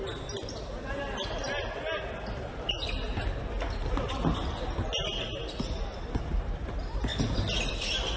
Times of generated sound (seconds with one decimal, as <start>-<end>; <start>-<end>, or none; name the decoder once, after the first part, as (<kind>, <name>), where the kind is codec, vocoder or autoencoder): none